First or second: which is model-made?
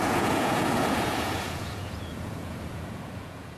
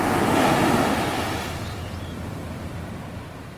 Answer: first